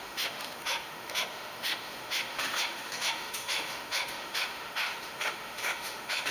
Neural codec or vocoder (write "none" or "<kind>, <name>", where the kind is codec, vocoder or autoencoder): autoencoder, DAC-VAE